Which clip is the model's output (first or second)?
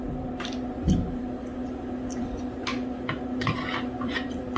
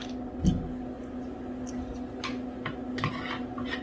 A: first